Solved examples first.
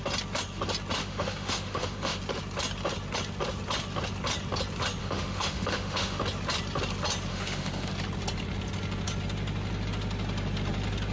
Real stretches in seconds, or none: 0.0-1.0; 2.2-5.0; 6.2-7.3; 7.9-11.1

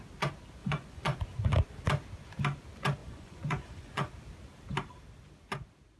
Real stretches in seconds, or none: 0.0-0.6; 1.2-3.0; 4.1-6.0